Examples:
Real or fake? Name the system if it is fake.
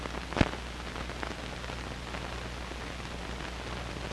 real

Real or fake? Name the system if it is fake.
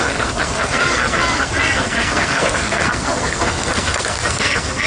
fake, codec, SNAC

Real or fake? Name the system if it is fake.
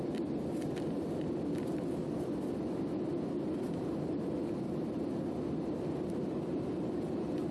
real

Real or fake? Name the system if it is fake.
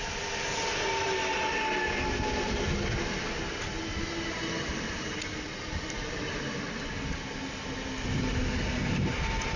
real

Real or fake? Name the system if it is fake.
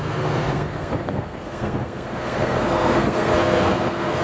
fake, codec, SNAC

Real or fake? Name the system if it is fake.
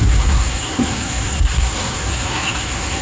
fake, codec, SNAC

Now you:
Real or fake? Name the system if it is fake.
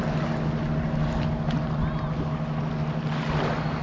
real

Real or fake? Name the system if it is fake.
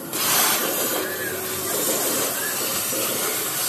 real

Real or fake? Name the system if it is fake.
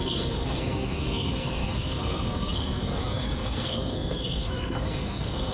fake, codec, SNAC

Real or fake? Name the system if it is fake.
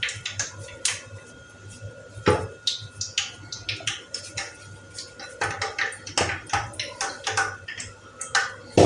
real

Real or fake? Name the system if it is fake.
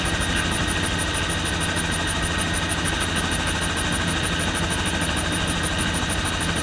real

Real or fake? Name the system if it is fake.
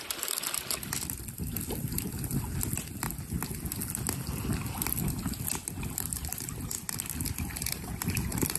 real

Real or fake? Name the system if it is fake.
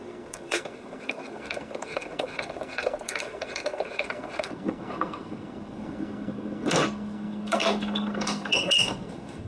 fake, codec, SNAC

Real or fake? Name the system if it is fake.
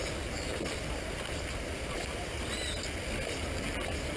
real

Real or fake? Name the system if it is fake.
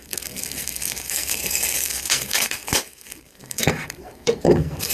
fake, codec, SNAC